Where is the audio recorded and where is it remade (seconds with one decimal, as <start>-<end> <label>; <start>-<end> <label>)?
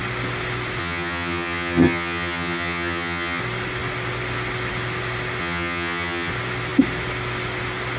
0.0-0.8 recorded; 0.8-3.4 remade; 3.4-5.4 recorded; 5.4-6.3 remade; 6.3-8.0 recorded